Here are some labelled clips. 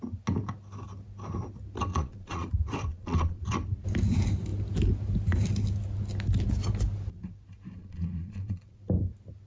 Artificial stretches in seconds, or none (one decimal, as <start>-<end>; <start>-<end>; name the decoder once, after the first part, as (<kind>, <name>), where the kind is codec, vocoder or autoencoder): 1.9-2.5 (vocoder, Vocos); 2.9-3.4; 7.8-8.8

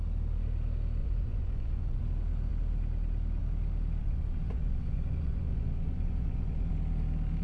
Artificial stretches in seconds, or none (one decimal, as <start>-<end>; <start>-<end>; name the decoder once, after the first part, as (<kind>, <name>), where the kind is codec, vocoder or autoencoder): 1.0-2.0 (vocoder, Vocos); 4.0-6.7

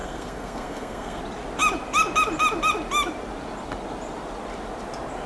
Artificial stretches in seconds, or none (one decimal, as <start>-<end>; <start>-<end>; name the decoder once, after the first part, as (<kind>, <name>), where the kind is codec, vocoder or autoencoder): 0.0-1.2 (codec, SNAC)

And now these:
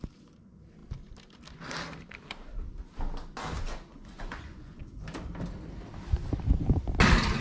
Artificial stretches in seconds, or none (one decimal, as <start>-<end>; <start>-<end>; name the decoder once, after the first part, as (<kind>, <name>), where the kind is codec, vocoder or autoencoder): 3.9-4.8 (vocoder, Vocos)